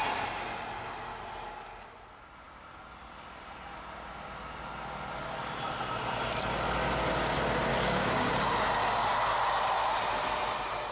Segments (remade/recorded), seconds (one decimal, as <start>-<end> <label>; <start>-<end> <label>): 0.0-7.7 recorded; 7.7-8.3 remade; 8.3-10.9 recorded